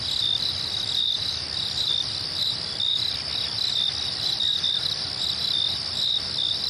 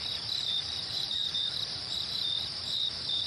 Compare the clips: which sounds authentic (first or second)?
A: first